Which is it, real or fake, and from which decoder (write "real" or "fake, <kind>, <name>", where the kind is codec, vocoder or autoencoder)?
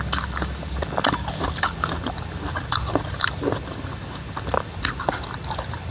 real